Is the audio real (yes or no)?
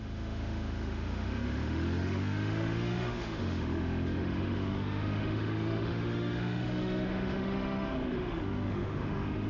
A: no